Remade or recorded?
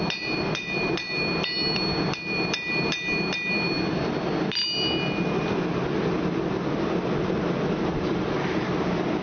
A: recorded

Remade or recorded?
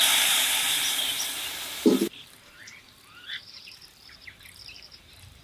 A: remade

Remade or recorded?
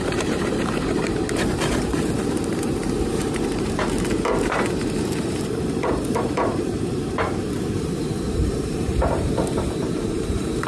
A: remade